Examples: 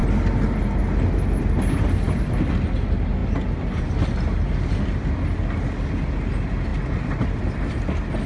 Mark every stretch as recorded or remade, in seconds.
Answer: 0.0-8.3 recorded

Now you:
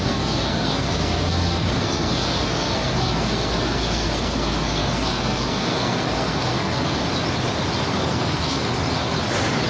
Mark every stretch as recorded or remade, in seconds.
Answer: 0.0-7.0 remade; 7.0-7.9 recorded; 7.9-8.7 remade; 8.7-9.7 recorded

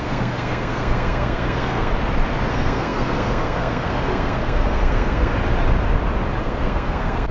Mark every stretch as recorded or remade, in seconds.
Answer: 0.0-1.9 remade; 1.9-2.5 recorded; 2.5-5.3 remade; 5.3-6.4 recorded; 6.4-7.3 remade

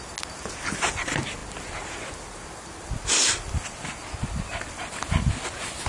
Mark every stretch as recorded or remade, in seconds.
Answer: 0.0-5.9 recorded

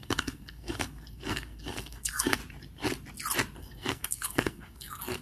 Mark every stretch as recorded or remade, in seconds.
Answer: 0.0-2.4 remade; 2.4-3.6 recorded; 3.6-5.2 remade